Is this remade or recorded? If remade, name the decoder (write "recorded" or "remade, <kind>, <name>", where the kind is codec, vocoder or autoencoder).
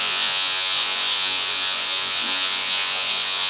remade, vocoder, Vocos